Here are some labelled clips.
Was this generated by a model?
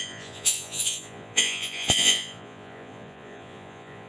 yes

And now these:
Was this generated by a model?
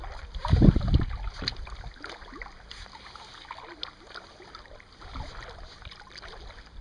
no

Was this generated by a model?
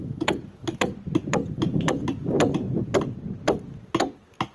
no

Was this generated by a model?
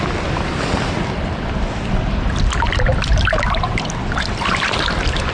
no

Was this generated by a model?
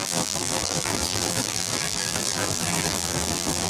yes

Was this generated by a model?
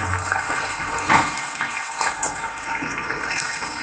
yes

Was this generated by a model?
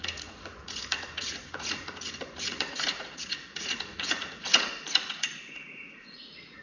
yes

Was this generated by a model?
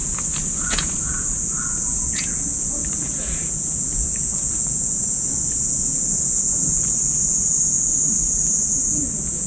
yes